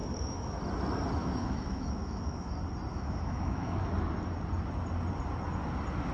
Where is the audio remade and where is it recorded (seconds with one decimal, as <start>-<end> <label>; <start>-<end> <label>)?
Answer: 0.0-0.6 remade; 0.6-1.2 recorded; 1.2-2.5 remade; 2.5-2.9 recorded; 2.9-3.8 remade; 3.8-6.1 recorded